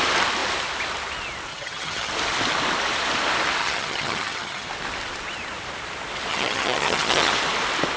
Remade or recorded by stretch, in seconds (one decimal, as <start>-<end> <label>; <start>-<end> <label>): 0.0-1.5 recorded; 1.5-2.1 remade; 2.1-3.6 recorded; 3.6-4.7 remade; 4.7-6.3 recorded; 6.3-7.3 remade; 7.3-8.0 recorded